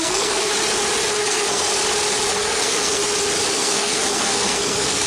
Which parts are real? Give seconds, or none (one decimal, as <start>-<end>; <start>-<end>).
0.5-1.2; 1.7-2.3; 3.0-3.5